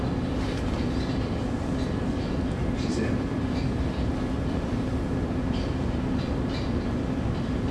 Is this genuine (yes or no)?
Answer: yes